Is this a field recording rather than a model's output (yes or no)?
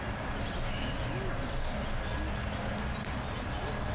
yes